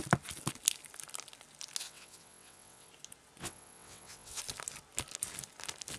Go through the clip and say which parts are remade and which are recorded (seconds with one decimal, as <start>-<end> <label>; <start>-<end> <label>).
0.0-1.8 recorded; 1.8-2.9 remade; 2.9-3.4 recorded; 3.4-4.4 remade; 4.4-6.0 recorded